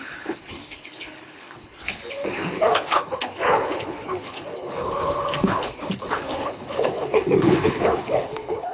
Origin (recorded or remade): remade